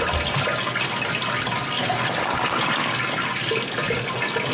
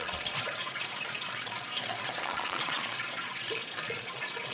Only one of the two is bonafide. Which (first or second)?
first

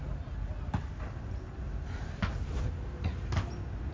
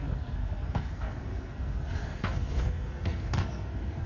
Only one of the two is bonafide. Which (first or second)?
first